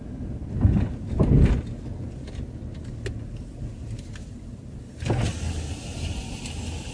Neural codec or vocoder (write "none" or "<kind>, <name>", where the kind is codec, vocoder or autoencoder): none